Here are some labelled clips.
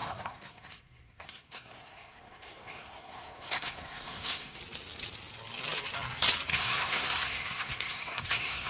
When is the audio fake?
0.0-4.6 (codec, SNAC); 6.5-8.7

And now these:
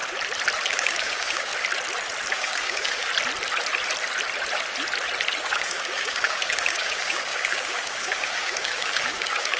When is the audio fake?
0.7-1.5 (codec, DAC); 2.3-3.1; 5.4-9.6

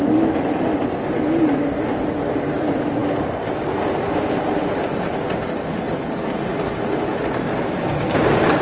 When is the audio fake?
none